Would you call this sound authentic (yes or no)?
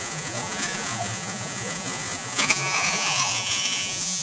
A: no